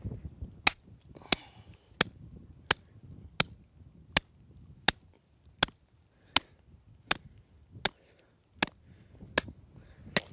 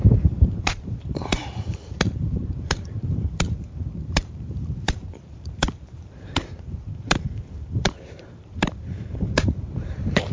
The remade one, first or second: second